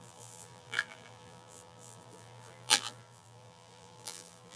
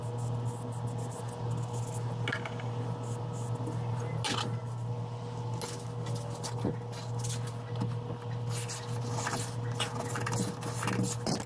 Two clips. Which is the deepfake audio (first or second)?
first